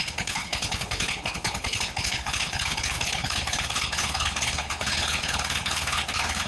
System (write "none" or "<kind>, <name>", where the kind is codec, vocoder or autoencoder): codec, HILCodec